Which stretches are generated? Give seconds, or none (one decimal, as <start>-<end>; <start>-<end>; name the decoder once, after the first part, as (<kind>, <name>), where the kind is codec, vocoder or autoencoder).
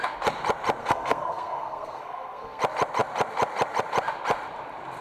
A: 0.8-2.6 (codec, SNAC)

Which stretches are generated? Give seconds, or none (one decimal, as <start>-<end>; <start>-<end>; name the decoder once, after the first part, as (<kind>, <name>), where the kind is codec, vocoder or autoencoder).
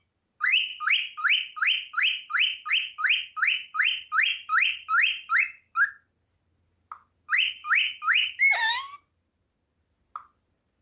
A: 0.7-2.7 (vocoder, BigVGAN v2)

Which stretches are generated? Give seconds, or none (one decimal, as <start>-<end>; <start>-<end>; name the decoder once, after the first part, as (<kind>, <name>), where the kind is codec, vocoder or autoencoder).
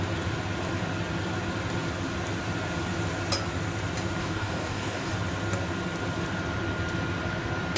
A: 4.2-5.1 (codec, DAC)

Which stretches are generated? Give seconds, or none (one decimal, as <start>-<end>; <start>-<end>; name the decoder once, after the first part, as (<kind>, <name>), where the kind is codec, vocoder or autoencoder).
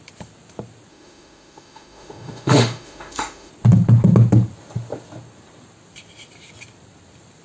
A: 0.9-3.5 (autoencoder, DAC-VAE)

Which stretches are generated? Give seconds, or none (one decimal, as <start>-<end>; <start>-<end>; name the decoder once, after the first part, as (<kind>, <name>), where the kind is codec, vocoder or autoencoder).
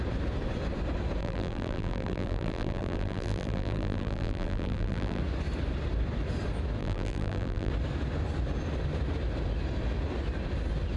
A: 1.2-5.2 (vocoder, BigVGAN v2); 6.8-7.7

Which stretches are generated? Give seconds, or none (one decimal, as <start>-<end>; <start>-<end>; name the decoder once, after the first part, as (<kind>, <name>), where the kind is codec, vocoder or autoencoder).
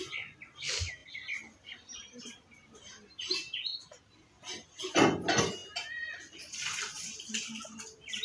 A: none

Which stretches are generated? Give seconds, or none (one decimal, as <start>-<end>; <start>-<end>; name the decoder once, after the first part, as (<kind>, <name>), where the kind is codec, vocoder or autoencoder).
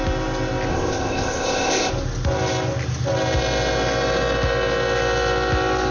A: 0.7-1.9 (codec, ZipCodec)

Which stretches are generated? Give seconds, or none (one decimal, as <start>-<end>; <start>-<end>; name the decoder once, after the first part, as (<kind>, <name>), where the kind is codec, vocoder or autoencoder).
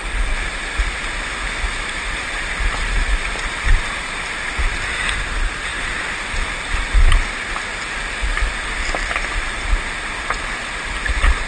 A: none